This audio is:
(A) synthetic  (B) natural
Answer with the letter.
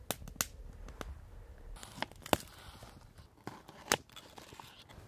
B